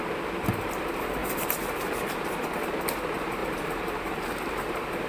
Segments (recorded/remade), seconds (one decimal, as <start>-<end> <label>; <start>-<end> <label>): 0.0-1.2 recorded; 1.2-1.9 remade; 1.9-3.4 recorded; 3.4-5.1 remade